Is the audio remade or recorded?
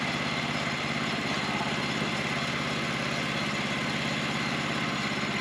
recorded